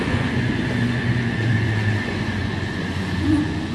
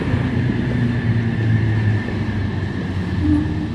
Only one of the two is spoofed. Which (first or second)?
first